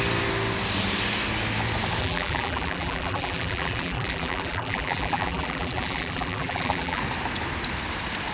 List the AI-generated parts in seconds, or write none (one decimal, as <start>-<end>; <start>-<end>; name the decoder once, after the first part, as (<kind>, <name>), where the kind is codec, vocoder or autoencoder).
2.0-7.0 (vocoder, BigVGAN v2)